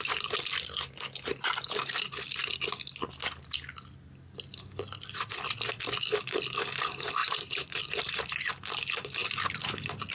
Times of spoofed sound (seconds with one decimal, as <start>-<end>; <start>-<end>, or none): 7.2-7.8

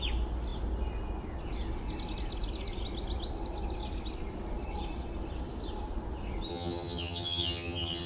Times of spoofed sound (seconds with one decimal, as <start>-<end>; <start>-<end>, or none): 6.5-8.1

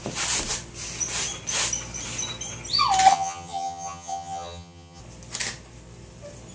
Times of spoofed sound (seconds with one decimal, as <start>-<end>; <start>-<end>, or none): 3.1-5.0

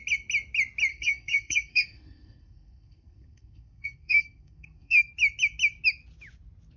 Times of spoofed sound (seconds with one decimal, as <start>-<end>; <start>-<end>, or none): 0.9-5.0

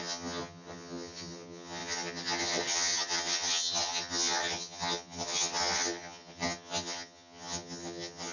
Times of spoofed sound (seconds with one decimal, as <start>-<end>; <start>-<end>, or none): 0.0-8.3

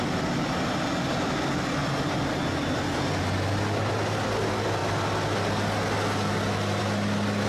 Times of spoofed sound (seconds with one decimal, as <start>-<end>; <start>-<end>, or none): none

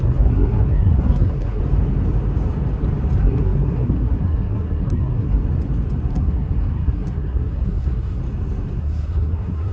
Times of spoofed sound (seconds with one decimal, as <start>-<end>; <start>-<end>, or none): 0.0-1.6; 3.2-5.4; 6.1-8.2; 8.8-9.7